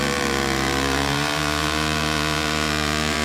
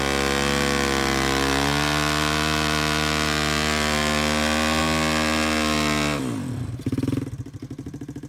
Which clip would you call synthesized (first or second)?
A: first